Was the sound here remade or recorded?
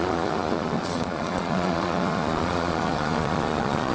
remade